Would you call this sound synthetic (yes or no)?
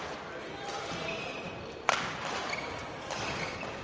no